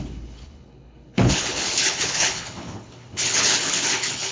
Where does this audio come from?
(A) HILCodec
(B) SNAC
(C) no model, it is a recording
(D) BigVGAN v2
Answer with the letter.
A